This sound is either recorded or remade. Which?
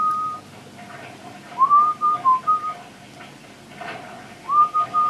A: recorded